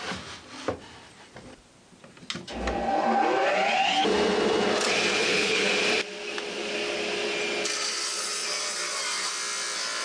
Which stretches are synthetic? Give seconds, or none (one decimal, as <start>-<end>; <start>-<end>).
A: 5.2-5.7